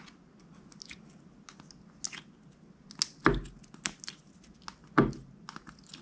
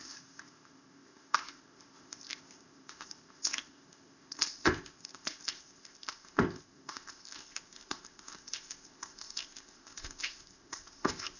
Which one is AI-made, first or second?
second